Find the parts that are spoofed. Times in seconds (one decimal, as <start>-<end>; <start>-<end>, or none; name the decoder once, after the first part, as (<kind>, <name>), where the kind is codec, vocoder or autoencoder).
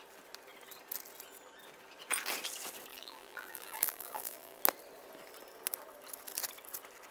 2.9-4.6 (vocoder, BigVGAN v2)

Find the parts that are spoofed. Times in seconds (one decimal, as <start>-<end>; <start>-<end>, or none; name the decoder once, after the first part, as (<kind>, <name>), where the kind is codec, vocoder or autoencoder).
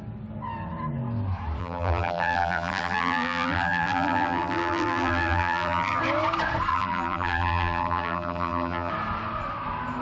1.6-6.0 (vocoder, BigVGAN v2); 6.7-8.9